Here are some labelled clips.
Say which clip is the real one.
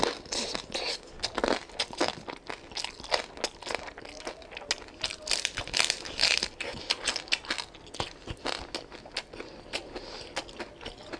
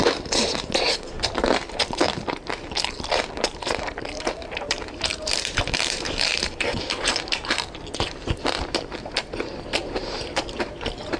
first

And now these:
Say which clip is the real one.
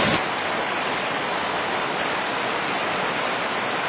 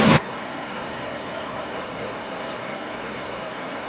first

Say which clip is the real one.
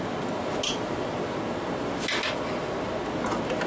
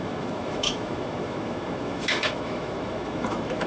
first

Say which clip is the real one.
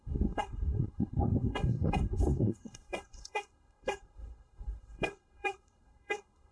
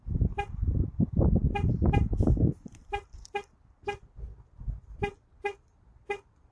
second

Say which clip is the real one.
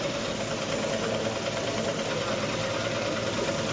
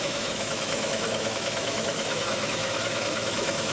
first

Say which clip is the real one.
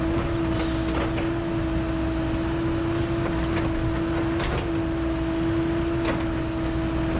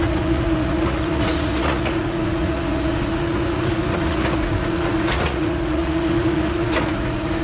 first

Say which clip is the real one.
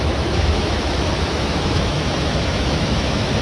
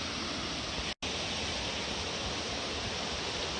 second